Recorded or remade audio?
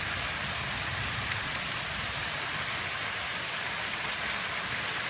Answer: recorded